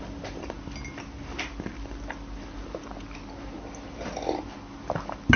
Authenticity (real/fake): real